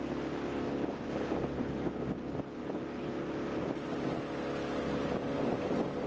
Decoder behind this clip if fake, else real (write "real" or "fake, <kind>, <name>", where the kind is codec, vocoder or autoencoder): real